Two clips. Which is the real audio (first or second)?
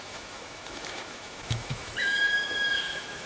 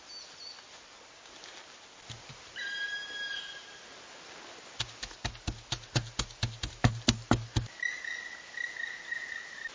second